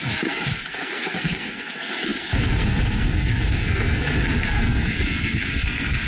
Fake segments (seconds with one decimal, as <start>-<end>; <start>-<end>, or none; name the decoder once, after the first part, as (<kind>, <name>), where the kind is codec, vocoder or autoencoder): 0.0-6.1 (codec, SNAC)